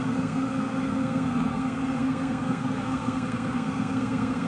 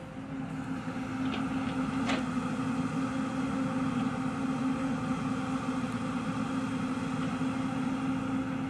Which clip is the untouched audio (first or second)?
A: second